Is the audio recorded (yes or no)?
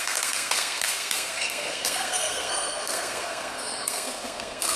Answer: no